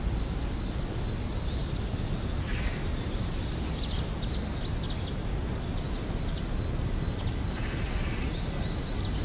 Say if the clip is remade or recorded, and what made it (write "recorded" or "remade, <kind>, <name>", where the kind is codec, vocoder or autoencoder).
recorded